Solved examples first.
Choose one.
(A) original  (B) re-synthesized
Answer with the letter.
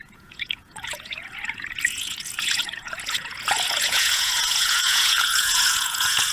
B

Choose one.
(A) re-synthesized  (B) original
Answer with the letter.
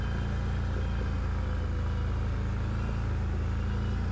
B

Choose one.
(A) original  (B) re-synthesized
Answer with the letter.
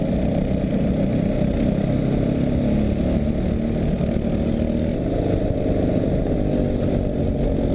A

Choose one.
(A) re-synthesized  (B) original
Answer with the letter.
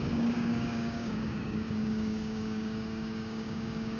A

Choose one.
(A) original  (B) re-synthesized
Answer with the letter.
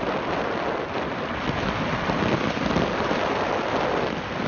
A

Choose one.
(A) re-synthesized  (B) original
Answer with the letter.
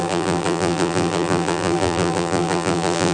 A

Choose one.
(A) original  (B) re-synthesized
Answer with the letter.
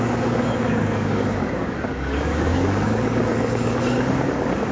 B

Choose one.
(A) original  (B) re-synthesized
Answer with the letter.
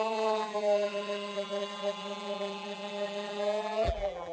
B